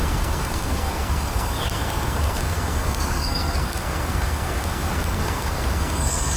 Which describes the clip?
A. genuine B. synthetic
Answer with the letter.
B